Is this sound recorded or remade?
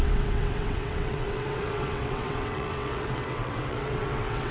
remade